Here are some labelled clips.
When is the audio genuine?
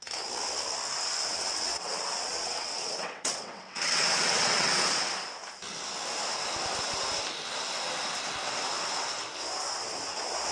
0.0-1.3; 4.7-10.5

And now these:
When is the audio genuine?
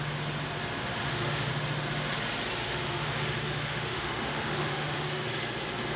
0.0-1.0; 1.5-2.6; 5.3-6.0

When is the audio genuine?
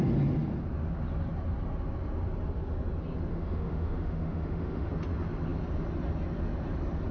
0.0-3.3; 4.9-7.1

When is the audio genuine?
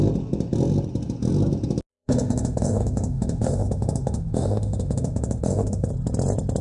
0.0-1.9; 5.9-6.6